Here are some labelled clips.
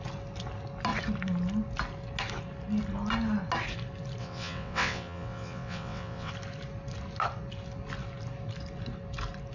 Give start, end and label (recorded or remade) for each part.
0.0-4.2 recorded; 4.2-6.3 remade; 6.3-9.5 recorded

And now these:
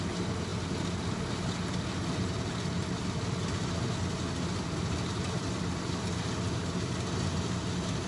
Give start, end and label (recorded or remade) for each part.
0.0-8.1 recorded

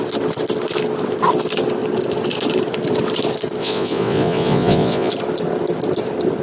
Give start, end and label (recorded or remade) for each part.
0.0-3.6 recorded; 3.6-5.1 remade; 5.1-6.4 recorded

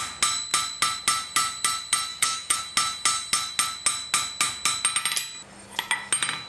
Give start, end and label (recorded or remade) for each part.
0.0-2.1 recorded; 2.1-2.6 remade; 2.6-6.5 recorded

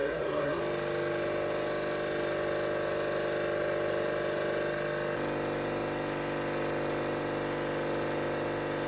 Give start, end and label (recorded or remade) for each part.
0.0-0.6 remade; 0.6-8.9 recorded

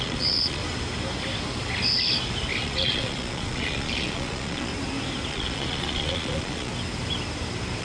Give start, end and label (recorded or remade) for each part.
0.0-0.6 remade; 0.6-2.6 recorded; 2.6-4.7 remade; 4.7-5.3 recorded; 5.3-6.7 remade; 6.7-7.8 recorded

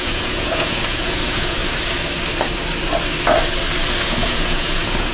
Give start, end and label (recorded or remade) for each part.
0.0-1.6 remade; 1.6-4.0 recorded; 4.0-5.1 remade

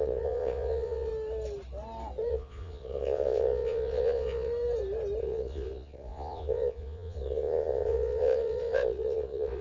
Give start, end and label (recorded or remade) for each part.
0.0-1.1 remade; 1.1-2.3 recorded; 2.3-4.5 remade; 4.5-5.2 recorded; 5.2-9.6 remade